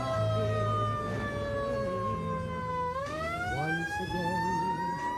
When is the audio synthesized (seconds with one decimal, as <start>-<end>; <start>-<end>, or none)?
2.7-4.6